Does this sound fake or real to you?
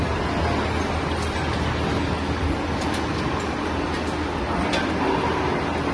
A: real